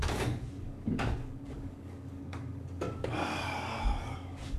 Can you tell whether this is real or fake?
fake